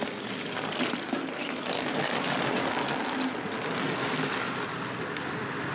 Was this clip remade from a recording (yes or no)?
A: no